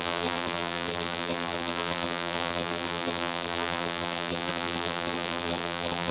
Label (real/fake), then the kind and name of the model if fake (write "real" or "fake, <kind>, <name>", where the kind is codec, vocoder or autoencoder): fake, vocoder, BigVGAN v2